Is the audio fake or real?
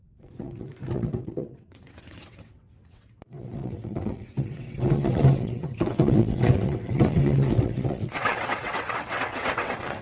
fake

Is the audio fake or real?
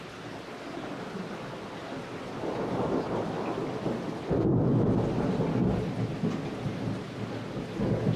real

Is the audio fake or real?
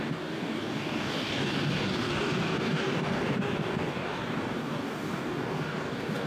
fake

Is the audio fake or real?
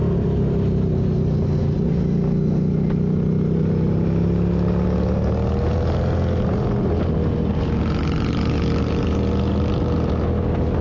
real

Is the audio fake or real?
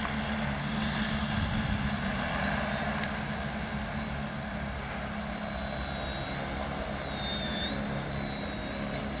real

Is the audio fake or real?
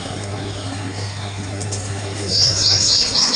fake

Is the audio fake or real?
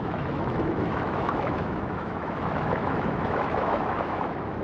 fake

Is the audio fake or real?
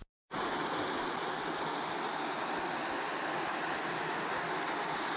real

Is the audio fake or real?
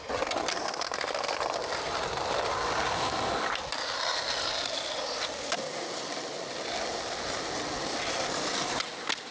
real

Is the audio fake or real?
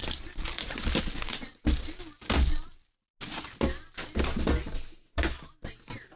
real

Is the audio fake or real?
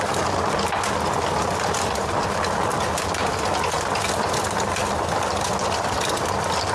real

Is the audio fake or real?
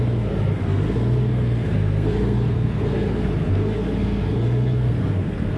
fake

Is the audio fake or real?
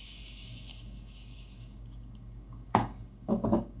fake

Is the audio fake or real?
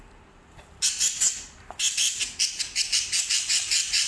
fake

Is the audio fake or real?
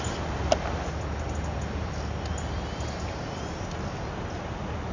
real